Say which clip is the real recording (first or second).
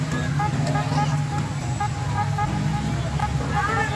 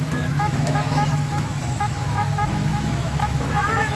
first